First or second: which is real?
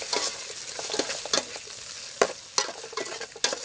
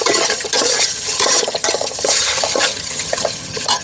first